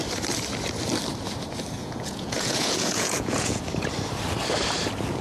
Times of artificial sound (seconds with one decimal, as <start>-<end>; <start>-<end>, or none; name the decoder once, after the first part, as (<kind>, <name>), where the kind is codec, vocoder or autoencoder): 1.8-3.6 (vocoder, Vocos)